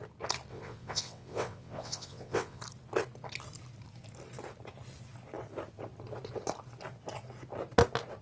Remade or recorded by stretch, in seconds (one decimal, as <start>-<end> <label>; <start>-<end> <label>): 0.0-0.5 recorded; 0.5-2.6 remade; 2.6-8.2 recorded